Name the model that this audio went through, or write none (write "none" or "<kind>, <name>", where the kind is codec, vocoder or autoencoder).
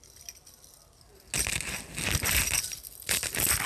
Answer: none